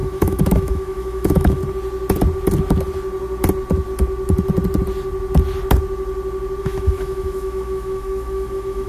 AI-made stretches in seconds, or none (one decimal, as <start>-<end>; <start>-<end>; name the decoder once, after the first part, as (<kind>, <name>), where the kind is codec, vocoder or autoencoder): 0.0-1.6 (autoencoder, DAC-VAE); 6.6-8.9